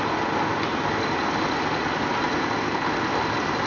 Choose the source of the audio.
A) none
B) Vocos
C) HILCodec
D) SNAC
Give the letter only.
A